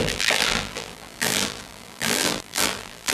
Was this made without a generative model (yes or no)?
no